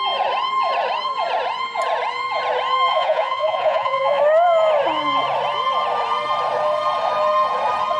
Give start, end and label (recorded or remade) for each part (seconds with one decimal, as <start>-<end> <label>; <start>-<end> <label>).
0.0-2.9 recorded; 2.9-4.2 remade; 4.2-8.0 recorded

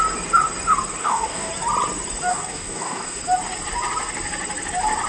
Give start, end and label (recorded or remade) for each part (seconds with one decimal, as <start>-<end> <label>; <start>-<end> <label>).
0.0-1.0 recorded; 1.0-1.5 remade; 1.5-2.3 recorded; 2.3-3.2 remade; 3.2-5.1 recorded

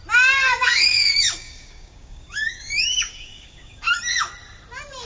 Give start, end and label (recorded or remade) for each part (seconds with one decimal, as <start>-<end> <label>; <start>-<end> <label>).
0.0-0.7 recorded; 0.7-3.8 remade; 3.8-5.1 recorded

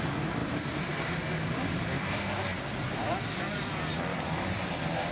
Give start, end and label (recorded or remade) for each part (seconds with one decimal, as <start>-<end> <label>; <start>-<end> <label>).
0.0-0.4 recorded; 0.4-3.3 remade; 3.3-4.1 recorded; 4.1-5.1 remade

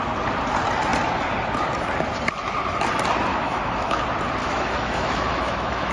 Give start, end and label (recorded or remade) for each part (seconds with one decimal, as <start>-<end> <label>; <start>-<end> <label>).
0.0-3.3 recorded; 3.3-4.0 remade; 4.0-4.4 recorded; 4.4-5.9 remade

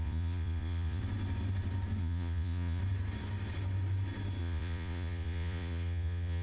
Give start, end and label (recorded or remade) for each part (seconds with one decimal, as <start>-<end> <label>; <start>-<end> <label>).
0.0-1.0 remade; 1.0-2.0 recorded; 2.0-2.8 remade; 2.8-4.4 recorded; 4.4-6.4 remade

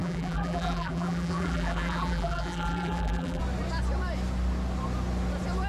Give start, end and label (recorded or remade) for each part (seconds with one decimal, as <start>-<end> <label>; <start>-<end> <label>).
0.0-3.4 remade; 3.4-5.7 recorded

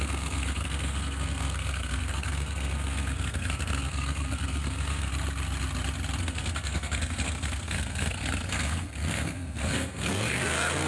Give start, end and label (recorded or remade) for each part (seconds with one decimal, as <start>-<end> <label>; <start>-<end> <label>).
0.0-5.1 remade; 5.1-6.2 recorded; 6.2-10.9 remade